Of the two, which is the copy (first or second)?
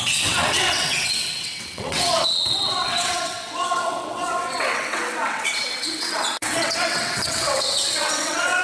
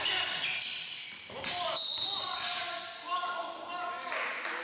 first